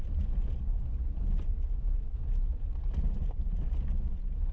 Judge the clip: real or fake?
real